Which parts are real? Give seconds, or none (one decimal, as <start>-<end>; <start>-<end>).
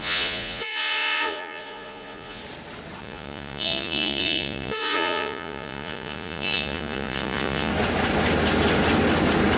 2.4-3.0; 7.7-9.6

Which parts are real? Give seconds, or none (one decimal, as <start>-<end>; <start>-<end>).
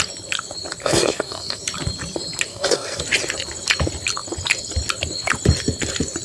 0.0-0.8; 1.6-2.5; 3.0-6.2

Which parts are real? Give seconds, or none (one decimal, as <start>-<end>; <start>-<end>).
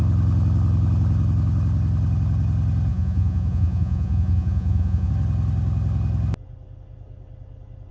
0.0-2.9; 5.1-7.9